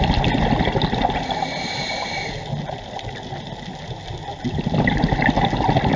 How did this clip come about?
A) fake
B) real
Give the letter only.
B